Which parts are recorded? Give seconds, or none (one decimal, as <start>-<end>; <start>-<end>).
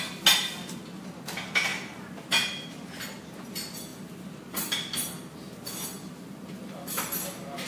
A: 0.0-7.7